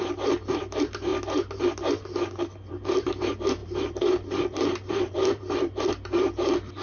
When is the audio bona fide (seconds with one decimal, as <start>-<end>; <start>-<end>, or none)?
1.1-2.7